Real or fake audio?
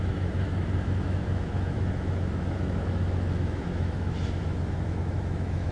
fake